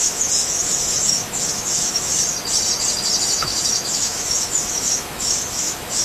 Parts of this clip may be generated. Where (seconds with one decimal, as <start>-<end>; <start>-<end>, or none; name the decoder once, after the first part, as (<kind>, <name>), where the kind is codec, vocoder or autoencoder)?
0.0-2.1 (autoencoder, DAC-VAE); 3.2-6.0